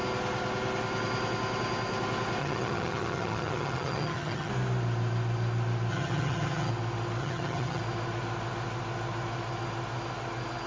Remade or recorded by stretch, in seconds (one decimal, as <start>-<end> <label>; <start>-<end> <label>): 0.0-2.4 recorded; 2.4-4.5 remade; 4.5-5.9 recorded; 5.9-6.7 remade; 6.7-7.2 recorded; 7.2-7.8 remade; 7.8-10.7 recorded

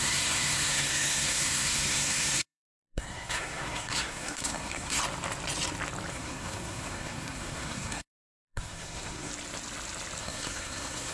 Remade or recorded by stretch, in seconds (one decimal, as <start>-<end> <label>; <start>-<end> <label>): 0.0-5.0 remade; 5.0-6.1 recorded; 6.1-9.3 remade; 9.3-10.2 recorded; 10.2-11.1 remade

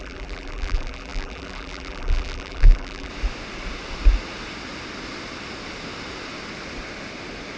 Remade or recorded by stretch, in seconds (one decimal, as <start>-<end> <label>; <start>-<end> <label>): 0.0-3.1 remade; 3.1-7.6 recorded

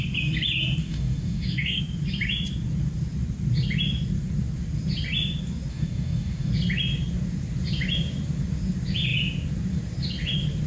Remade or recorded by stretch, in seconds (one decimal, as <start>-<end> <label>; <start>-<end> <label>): 0.0-0.8 recorded; 0.8-1.8 remade; 1.8-5.7 recorded; 5.7-6.5 remade; 6.5-10.7 recorded